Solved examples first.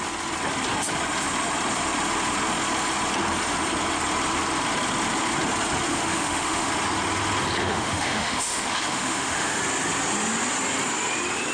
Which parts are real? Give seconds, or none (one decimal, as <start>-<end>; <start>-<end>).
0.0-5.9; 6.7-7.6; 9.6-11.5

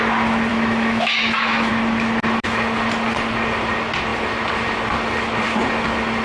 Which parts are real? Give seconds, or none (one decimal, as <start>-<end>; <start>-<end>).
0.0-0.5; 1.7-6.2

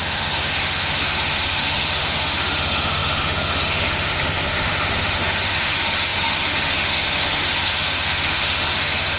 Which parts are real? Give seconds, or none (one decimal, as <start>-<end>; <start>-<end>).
none

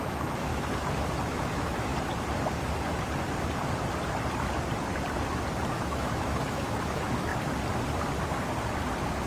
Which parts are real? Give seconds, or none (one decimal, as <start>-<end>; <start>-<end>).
0.5-1.2; 1.9-5.7; 7.3-9.3

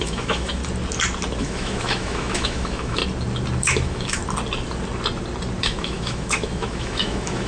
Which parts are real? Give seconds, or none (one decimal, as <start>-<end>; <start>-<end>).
0.6-1.4; 3.0-3.6; 4.2-5.6

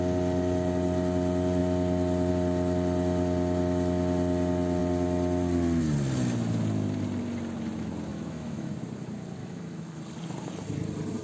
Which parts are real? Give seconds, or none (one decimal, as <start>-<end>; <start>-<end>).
0.0-8.1; 8.7-9.4; 10.0-11.2

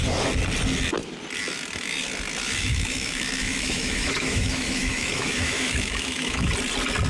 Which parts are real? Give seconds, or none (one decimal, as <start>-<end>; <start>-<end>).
0.0-2.7; 6.5-7.1

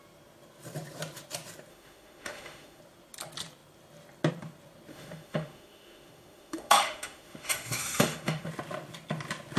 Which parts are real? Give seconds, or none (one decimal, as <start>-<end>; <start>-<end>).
0.0-1.7; 2.8-4.9; 8.5-9.6